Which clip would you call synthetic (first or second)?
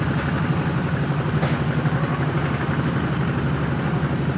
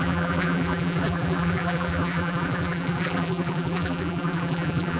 second